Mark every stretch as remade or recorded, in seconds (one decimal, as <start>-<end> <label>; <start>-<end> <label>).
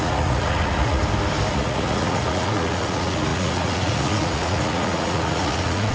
0.0-1.0 remade; 1.0-1.5 recorded; 1.5-5.9 remade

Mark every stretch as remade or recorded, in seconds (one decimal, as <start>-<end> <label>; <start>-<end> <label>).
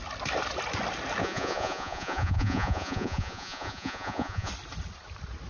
0.0-1.2 recorded; 1.2-4.5 remade; 4.5-5.5 recorded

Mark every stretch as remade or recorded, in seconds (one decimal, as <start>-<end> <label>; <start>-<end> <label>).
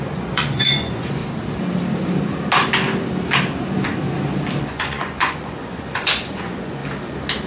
0.0-1.2 remade; 1.2-4.6 recorded; 4.6-6.8 remade; 6.8-7.5 recorded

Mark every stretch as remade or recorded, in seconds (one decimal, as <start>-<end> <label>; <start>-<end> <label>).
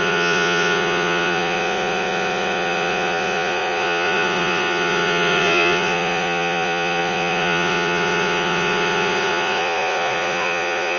0.0-11.0 remade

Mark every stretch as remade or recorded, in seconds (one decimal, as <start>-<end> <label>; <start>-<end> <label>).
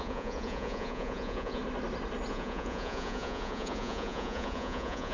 0.0-1.6 remade; 1.6-2.3 recorded; 2.3-5.1 remade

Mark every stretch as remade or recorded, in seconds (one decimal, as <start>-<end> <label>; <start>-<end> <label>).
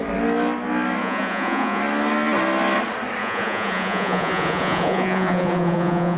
0.0-1.0 recorded; 1.0-1.8 remade; 1.8-3.2 recorded; 3.2-6.2 remade